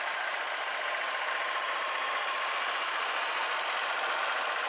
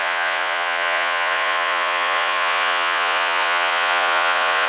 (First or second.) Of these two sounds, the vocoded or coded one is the second